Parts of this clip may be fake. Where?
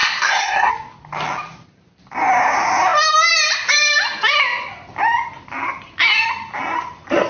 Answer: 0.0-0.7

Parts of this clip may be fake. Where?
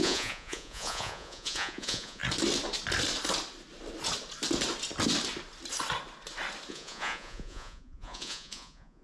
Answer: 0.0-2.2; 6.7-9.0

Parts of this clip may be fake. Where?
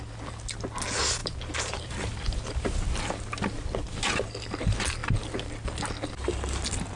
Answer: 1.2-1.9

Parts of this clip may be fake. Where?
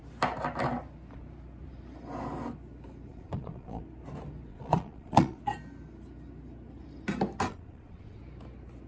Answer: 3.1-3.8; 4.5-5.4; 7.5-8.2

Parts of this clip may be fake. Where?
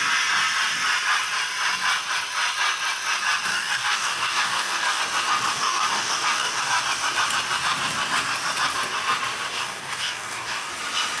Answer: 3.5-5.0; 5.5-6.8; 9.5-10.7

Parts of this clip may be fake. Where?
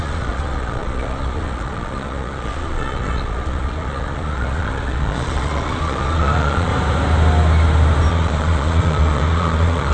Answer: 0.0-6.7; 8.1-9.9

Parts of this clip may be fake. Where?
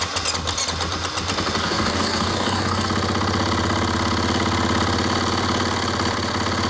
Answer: 1.6-2.9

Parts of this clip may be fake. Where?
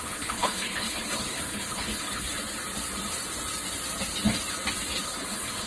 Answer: 0.0-2.3; 5.0-5.7